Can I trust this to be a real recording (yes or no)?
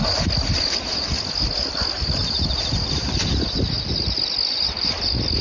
yes